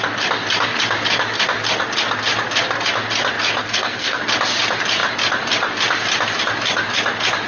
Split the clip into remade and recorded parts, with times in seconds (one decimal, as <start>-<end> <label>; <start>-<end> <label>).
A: 0.0-3.6 recorded; 3.6-4.2 remade; 4.2-7.5 recorded